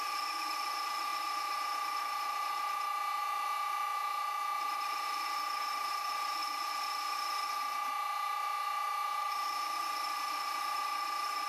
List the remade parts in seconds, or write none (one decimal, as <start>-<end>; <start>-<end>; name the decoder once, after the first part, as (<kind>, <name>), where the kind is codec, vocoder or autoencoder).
9.2-9.8 (autoencoder, DAC-VAE)